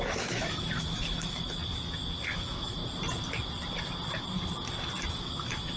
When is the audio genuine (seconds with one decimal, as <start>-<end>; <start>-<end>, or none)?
1.6-2.3; 2.8-5.1